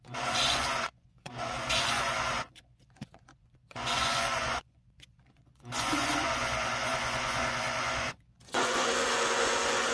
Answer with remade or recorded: remade